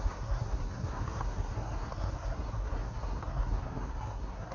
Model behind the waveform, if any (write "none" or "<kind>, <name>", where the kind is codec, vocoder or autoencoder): codec, SNAC